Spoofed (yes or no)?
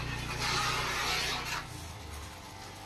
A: no